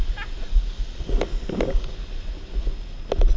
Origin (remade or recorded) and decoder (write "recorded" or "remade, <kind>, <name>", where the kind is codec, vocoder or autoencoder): recorded